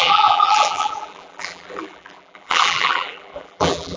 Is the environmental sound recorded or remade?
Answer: remade